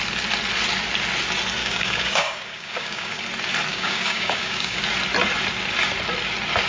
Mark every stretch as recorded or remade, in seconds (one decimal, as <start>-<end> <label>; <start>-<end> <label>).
0.0-1.6 recorded; 1.6-3.2 remade; 3.2-3.7 recorded; 3.7-4.8 remade; 4.8-6.7 recorded